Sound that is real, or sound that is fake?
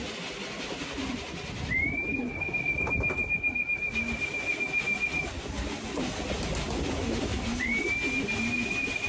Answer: real